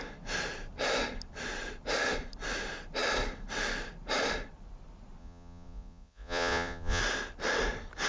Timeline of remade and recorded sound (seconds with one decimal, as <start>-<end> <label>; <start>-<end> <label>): 0.0-5.2 recorded; 5.2-7.0 remade; 7.0-8.1 recorded